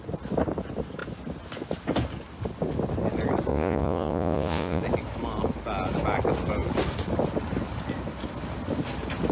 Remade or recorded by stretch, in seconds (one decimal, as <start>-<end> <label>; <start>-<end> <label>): 0.0-3.5 recorded; 3.5-4.8 remade; 4.8-9.3 recorded